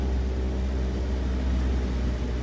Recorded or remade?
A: recorded